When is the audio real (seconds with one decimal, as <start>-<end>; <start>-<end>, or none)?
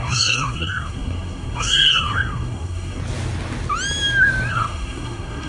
3.0-4.5